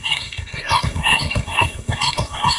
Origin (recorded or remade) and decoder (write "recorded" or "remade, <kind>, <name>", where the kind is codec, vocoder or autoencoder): remade, codec, SNAC